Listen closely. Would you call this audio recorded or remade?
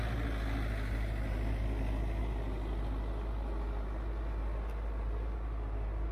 recorded